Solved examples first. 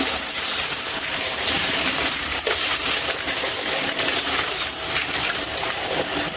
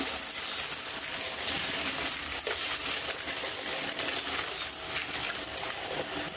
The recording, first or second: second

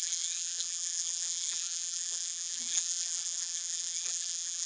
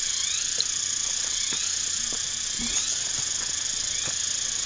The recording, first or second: second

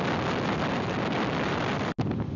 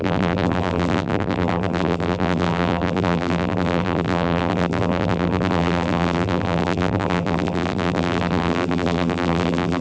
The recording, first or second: first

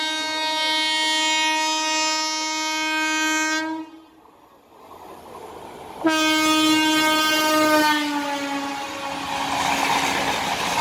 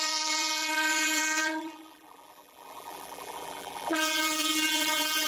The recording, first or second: first